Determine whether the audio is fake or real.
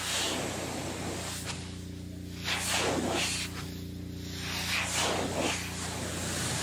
real